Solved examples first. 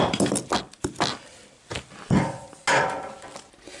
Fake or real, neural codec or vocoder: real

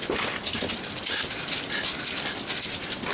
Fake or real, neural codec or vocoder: real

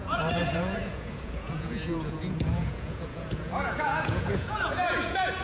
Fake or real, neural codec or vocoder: fake, vocoder, Vocos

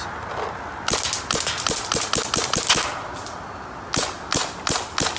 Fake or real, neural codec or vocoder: real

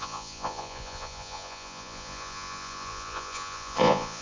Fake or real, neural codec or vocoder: fake, vocoder, Vocos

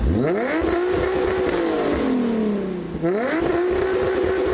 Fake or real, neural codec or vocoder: real